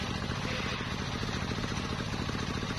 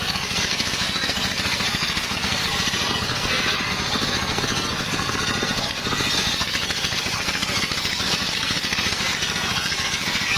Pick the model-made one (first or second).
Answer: second